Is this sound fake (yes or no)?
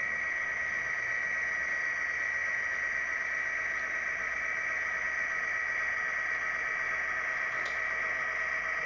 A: no